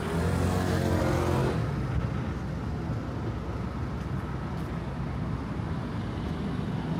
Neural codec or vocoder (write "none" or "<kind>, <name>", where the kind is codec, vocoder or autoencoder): none